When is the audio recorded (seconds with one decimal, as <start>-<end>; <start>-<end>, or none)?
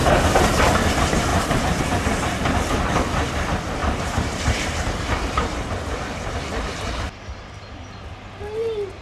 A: 0.0-1.3; 1.8-3.8; 5.7-9.0